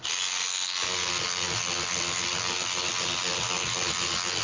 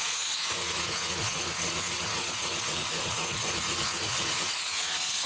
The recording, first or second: first